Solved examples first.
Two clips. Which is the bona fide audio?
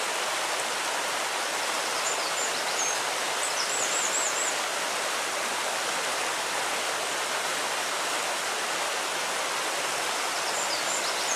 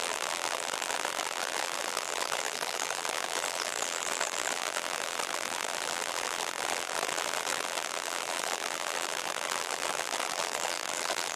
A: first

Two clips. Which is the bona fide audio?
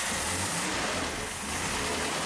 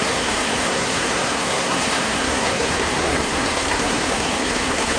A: first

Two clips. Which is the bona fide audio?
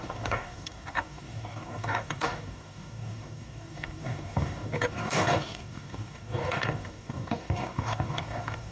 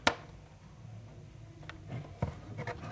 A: second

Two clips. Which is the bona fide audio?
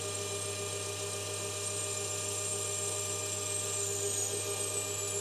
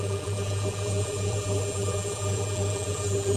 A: first